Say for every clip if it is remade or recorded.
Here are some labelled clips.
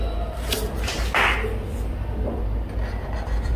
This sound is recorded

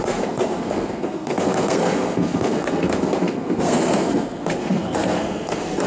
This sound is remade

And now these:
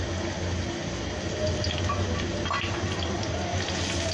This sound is recorded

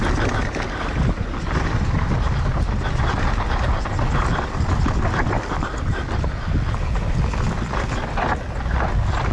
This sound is recorded